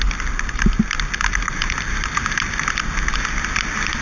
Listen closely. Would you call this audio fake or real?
real